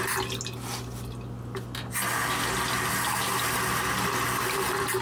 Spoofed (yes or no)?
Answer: no